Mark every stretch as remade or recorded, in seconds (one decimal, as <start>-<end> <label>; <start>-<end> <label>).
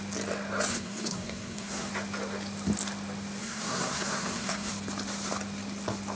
0.0-0.7 recorded; 0.7-1.9 remade; 1.9-3.4 recorded; 3.4-4.7 remade; 4.7-6.2 recorded